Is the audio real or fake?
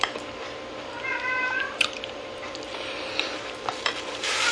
fake